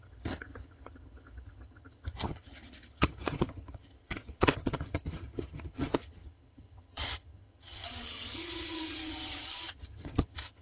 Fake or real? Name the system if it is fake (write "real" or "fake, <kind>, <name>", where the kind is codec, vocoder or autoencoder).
fake, vocoder, HiFi-GAN